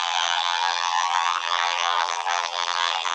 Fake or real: fake